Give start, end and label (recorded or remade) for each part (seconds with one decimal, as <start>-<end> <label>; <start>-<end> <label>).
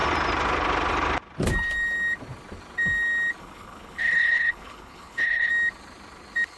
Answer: 0.0-3.4 recorded; 3.4-5.5 remade; 5.5-6.6 recorded